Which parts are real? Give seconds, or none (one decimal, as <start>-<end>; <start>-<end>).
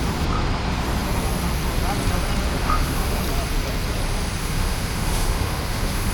0.0-2.6; 3.2-4.4